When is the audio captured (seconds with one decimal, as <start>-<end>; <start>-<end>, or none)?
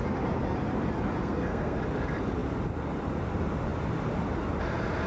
0.0-1.2; 1.8-5.1